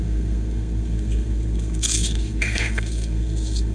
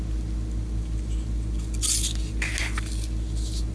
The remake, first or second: first